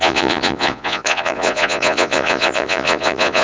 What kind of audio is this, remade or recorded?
remade